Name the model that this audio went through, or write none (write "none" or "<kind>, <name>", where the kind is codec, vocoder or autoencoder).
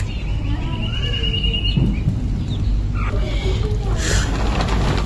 none